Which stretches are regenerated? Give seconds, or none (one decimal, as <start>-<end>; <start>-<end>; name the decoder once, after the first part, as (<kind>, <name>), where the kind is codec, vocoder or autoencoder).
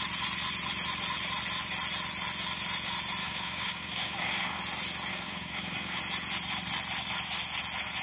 3.2-4.6 (codec, DAC); 5.1-6.0